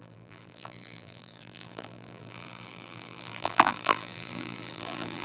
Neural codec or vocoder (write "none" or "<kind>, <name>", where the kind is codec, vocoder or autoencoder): vocoder, BigVGAN v2